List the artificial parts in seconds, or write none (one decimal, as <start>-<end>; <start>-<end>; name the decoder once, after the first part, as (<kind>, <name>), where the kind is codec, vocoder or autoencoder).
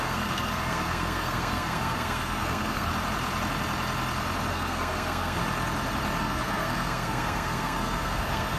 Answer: 0.0-2.9 (codec, SNAC); 4.5-5.4; 6.2-8.6